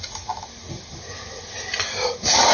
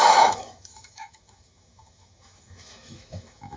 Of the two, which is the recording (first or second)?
first